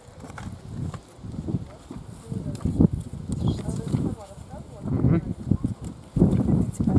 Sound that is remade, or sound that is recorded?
recorded